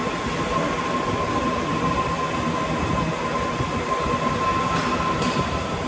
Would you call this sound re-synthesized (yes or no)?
no